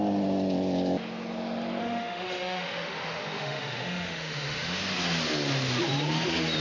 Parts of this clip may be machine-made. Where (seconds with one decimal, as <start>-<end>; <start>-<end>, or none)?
1.8-4.8